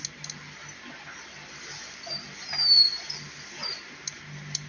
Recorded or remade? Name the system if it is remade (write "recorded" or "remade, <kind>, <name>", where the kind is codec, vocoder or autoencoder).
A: recorded